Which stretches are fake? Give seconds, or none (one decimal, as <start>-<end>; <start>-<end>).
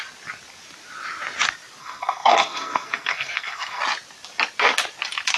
1.8-3.8